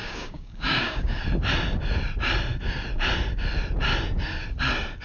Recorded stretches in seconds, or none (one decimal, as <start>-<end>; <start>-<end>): 1.2-5.0